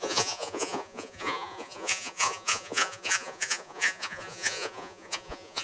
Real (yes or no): no